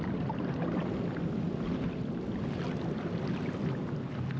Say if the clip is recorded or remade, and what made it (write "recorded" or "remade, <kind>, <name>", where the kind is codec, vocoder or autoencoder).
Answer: recorded